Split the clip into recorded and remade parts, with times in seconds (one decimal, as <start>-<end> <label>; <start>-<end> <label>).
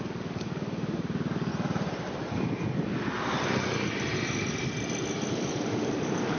0.0-1.5 remade; 1.5-5.3 recorded; 5.3-6.4 remade